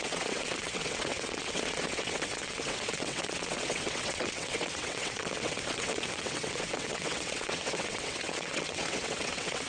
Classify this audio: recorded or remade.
remade